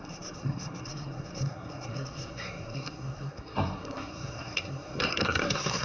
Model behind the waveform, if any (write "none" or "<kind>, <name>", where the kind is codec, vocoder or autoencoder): codec, SNAC